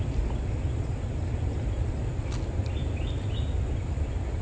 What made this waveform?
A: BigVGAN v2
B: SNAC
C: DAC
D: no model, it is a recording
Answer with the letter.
D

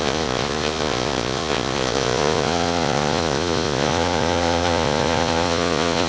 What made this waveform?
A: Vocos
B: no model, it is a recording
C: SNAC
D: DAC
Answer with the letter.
A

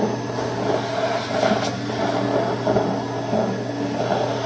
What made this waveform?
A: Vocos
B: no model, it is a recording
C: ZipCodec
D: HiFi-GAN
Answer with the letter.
B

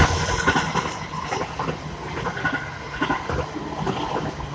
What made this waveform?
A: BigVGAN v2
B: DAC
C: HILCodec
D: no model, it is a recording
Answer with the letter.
D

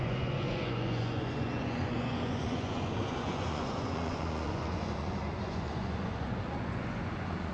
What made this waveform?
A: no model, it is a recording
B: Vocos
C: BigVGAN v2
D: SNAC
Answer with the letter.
B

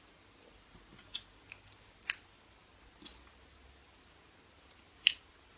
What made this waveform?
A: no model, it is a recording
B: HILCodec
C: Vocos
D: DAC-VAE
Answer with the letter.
A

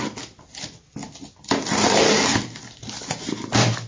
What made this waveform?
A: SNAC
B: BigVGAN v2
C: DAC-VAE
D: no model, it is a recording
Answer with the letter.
D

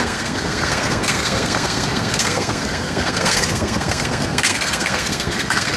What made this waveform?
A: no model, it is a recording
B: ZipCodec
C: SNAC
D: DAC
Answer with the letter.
C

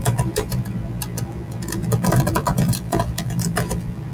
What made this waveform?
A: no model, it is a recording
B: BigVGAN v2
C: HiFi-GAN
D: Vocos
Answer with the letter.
B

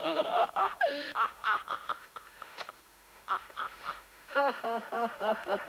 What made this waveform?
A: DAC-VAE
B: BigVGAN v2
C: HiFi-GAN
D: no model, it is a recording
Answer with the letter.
A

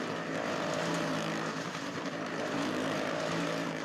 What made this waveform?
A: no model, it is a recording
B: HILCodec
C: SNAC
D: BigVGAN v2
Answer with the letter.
D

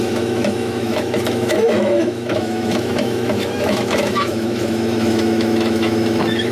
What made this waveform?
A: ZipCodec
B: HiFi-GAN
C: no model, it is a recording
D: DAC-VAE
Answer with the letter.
D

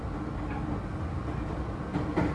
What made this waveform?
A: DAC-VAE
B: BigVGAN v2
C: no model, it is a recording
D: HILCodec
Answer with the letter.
C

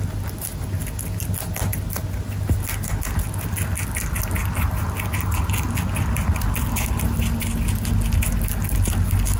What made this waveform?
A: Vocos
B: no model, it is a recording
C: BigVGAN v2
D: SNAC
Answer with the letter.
B